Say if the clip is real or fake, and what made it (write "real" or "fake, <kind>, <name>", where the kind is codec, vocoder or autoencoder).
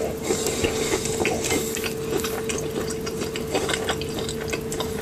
real